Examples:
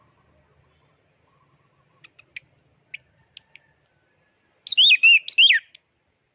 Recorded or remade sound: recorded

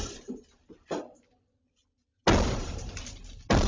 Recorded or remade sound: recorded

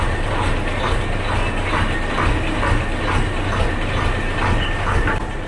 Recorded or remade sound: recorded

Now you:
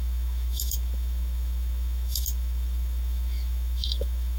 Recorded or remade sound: remade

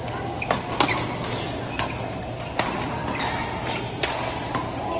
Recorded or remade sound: recorded